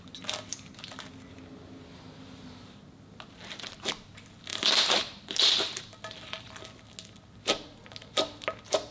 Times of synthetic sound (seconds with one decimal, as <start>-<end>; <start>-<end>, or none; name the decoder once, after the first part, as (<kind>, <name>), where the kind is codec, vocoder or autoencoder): 4.5-6.6 (vocoder, BigVGAN v2)